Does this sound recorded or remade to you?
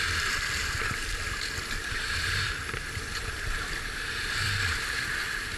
remade